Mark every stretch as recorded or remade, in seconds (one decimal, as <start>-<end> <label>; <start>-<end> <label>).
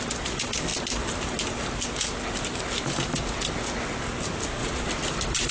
0.0-4.6 recorded; 4.6-5.5 remade